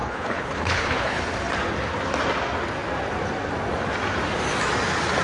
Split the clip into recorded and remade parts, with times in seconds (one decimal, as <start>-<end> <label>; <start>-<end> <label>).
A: 0.0-1.2 remade; 1.2-5.2 recorded